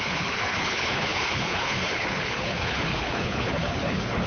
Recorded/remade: remade